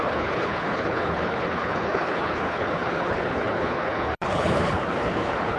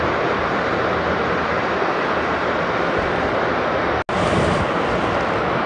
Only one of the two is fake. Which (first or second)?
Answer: first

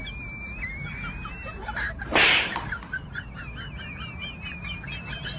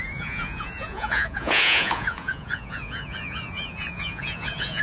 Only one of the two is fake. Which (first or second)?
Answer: second